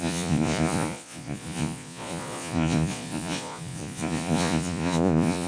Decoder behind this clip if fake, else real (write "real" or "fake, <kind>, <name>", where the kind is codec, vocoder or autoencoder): fake, vocoder, Vocos